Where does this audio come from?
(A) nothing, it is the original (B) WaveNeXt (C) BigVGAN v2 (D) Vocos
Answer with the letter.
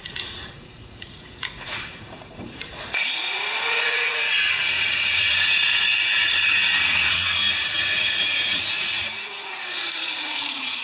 D